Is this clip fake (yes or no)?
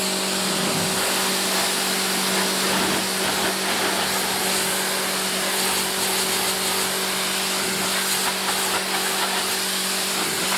no